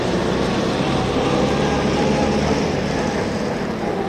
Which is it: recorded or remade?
remade